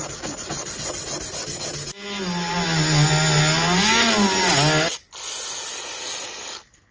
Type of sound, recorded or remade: recorded